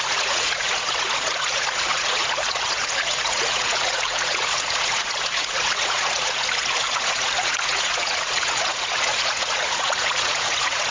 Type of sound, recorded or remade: remade